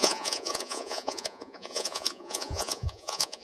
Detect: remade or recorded remade